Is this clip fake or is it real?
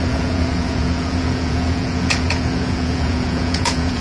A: fake